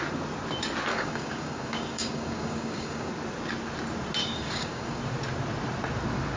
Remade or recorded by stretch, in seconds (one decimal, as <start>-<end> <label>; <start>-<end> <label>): 0.0-0.9 recorded; 0.9-3.1 remade; 3.1-4.2 recorded; 4.2-5.0 remade; 5.0-6.4 recorded

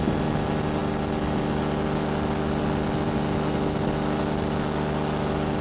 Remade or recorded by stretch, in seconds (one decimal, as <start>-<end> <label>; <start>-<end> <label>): 0.0-5.6 recorded

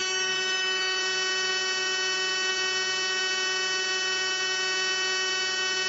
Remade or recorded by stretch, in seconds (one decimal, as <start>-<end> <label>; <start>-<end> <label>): 0.0-1.0 remade; 1.0-5.9 recorded

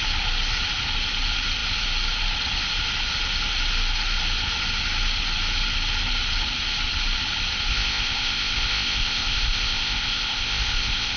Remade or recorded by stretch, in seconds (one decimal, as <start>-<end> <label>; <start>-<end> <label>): 0.0-7.7 recorded; 7.7-11.2 remade

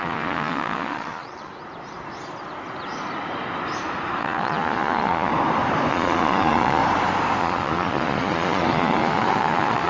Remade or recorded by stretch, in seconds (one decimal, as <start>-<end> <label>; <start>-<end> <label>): 0.0-1.5 remade; 1.5-4.2 recorded; 4.2-5.3 remade; 5.3-5.9 recorded; 5.9-6.8 remade; 6.8-7.4 recorded; 7.4-9.9 remade

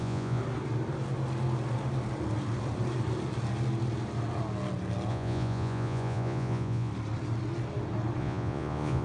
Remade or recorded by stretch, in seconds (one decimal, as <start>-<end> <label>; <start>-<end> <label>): 0.0-0.4 remade; 0.4-5.1 recorded; 5.1-6.9 remade; 6.9-8.2 recorded; 8.2-9.0 remade

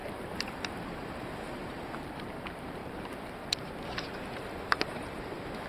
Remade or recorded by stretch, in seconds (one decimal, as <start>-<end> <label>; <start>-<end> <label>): 0.0-0.5 recorded; 0.5-2.8 remade; 2.8-4.6 recorded; 4.6-5.7 remade